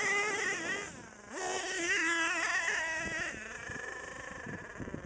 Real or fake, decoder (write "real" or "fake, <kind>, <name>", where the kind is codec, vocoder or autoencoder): real